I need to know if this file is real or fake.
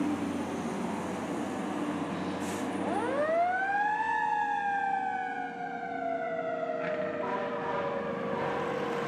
real